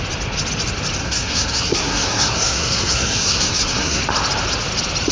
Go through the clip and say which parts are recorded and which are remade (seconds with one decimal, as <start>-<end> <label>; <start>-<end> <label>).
0.0-1.0 recorded; 1.0-4.0 remade; 4.0-5.1 recorded